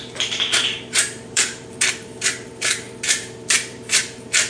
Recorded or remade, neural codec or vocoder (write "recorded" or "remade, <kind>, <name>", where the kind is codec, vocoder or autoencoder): remade, vocoder, BigVGAN v2